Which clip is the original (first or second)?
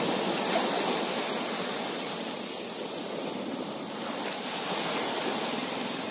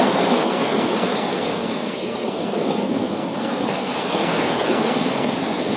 first